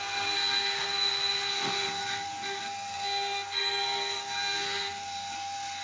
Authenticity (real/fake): fake